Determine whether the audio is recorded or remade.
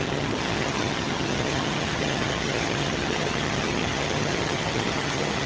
remade